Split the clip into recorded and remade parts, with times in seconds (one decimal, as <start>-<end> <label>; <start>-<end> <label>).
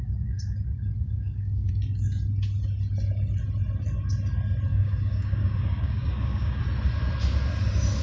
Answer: 0.0-1.0 recorded; 1.0-1.7 remade; 1.7-4.7 recorded; 4.7-6.6 remade; 6.6-8.0 recorded